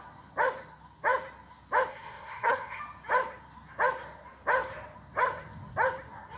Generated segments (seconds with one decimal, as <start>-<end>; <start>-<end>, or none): 1.9-2.8